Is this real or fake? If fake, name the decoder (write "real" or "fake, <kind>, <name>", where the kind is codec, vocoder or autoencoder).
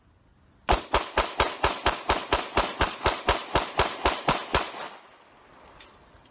real